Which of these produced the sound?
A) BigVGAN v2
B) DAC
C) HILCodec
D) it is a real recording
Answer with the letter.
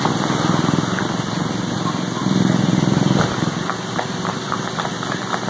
D